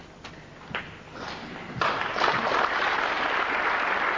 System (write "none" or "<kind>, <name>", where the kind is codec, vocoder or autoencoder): none